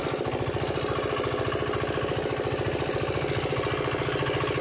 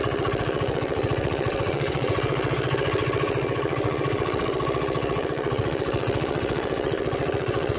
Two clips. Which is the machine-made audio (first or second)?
second